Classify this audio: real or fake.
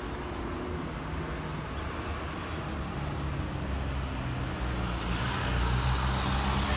real